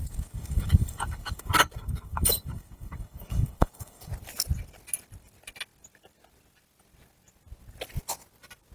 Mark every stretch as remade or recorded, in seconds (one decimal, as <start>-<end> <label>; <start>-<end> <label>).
0.0-4.1 remade; 4.1-8.7 recorded